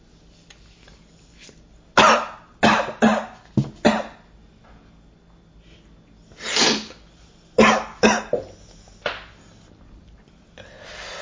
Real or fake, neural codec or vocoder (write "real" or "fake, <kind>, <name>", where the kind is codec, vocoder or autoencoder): real